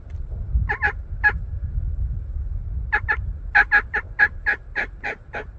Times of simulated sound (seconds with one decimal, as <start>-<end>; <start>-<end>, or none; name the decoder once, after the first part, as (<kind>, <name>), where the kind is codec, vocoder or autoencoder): none